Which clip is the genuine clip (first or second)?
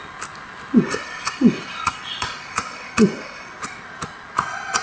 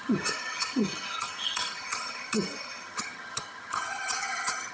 first